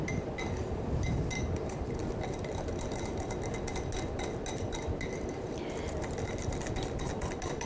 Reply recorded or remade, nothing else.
recorded